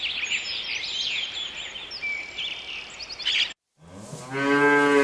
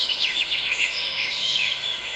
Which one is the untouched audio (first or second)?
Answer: first